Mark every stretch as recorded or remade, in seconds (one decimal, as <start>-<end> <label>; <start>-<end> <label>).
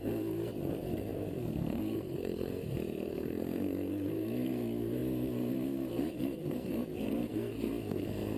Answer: 0.0-8.4 remade